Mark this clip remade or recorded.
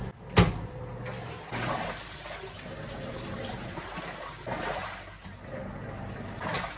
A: recorded